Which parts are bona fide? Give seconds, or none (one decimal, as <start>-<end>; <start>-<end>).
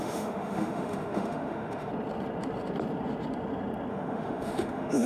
1.9-3.9